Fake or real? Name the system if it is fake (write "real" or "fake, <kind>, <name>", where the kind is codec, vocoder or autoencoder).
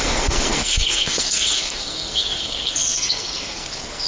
fake, codec, SNAC